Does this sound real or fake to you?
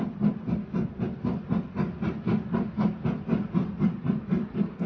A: real